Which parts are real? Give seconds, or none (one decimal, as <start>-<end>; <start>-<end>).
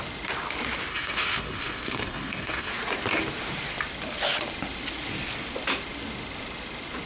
0.0-0.9; 2.7-7.1